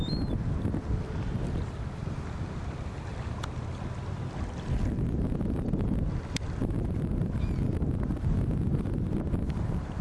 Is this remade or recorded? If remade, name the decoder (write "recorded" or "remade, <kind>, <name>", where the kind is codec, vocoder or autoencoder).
recorded